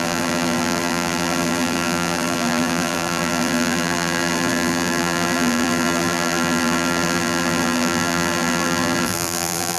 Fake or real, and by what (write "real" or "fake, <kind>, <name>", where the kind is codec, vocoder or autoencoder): fake, vocoder, BigVGAN v2